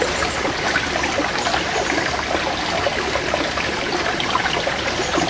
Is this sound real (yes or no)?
yes